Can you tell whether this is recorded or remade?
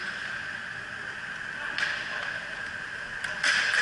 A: recorded